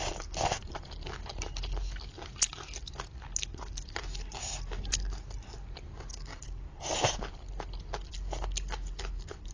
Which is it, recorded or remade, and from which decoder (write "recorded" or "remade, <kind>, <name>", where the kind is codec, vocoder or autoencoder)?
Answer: recorded